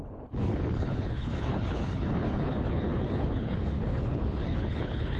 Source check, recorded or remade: remade